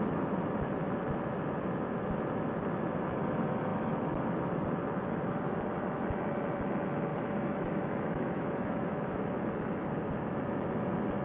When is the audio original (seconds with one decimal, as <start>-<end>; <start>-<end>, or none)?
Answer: 0.0-7.1; 9.2-11.2